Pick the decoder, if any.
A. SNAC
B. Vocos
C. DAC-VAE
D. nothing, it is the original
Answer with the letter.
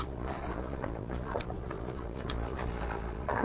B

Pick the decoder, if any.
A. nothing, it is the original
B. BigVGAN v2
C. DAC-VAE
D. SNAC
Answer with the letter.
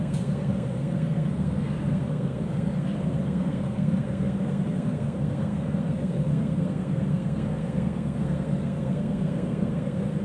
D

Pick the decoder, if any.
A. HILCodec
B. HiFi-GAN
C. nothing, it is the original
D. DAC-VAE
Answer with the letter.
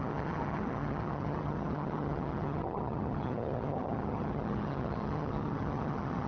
B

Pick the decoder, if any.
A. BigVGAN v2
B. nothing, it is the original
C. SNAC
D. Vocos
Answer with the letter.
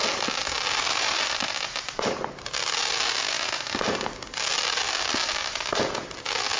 B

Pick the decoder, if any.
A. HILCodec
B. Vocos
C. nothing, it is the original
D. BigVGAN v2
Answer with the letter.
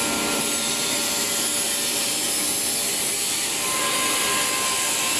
D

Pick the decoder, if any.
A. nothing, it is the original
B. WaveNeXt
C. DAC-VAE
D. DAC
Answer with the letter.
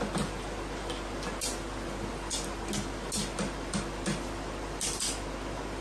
A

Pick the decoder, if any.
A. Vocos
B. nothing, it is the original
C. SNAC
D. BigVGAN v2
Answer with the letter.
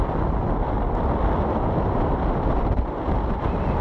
B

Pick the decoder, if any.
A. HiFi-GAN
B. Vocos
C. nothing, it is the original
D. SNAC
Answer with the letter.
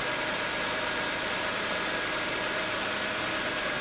C